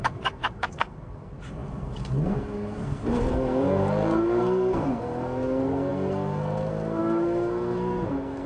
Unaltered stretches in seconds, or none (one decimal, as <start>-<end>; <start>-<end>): none